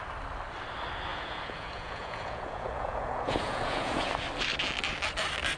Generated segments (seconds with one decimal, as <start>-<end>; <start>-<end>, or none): 1.1-4.1